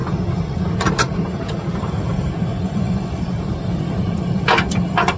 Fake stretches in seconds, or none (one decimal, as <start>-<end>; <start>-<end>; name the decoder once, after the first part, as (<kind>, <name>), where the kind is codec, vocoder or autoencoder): 2.5-3.2 (vocoder, Vocos)